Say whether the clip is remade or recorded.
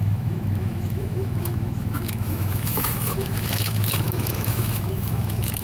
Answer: remade